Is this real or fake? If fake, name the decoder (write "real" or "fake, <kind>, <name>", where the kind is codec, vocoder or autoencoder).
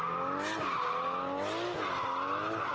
real